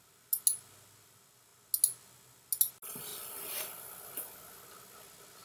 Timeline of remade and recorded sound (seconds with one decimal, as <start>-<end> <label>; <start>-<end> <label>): 0.0-5.4 recorded